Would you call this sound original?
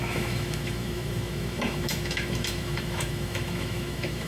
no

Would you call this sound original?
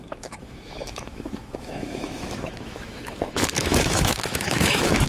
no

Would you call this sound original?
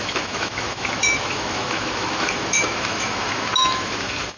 no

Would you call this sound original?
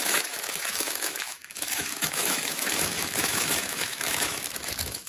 no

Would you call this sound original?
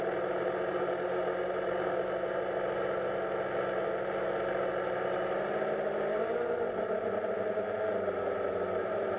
yes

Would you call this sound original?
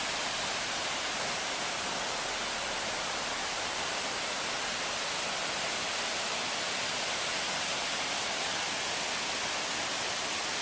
yes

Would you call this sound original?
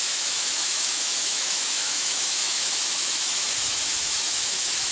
no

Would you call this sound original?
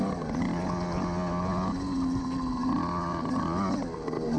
yes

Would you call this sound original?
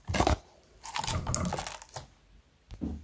yes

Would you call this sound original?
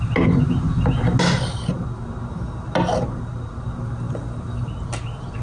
yes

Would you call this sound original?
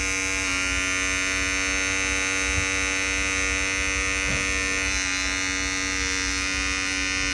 yes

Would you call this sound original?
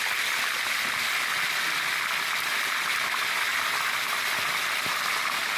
yes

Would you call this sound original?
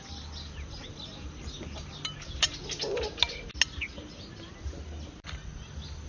yes